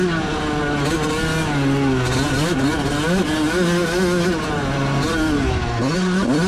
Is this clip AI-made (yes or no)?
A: no